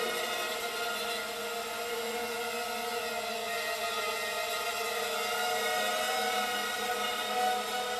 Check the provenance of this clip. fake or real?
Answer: real